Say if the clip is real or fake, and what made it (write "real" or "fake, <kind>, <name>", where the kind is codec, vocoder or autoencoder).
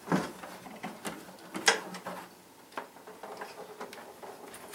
real